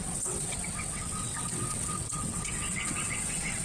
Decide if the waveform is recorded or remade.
remade